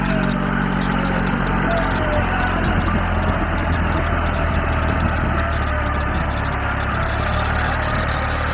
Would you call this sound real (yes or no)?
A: yes